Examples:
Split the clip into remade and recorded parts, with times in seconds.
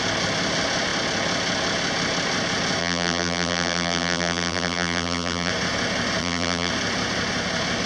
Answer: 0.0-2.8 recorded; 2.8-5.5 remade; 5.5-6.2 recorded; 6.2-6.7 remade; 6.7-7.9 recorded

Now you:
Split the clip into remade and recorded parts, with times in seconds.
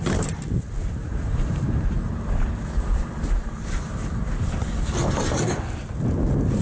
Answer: 0.0-1.0 recorded; 1.0-4.5 remade; 4.5-6.6 recorded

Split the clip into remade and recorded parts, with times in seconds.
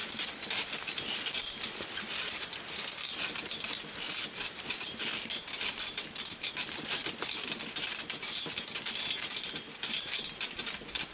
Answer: 0.0-11.1 remade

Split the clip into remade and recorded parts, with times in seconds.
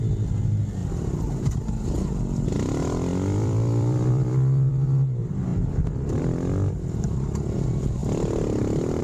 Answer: 0.0-0.8 recorded; 0.8-1.6 remade; 1.6-3.1 recorded; 3.1-4.7 remade; 4.7-5.5 recorded; 5.5-6.2 remade; 6.2-9.0 recorded